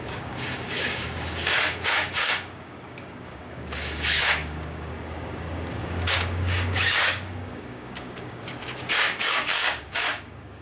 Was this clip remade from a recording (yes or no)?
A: yes